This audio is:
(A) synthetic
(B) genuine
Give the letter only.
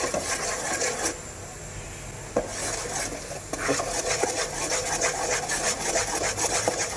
B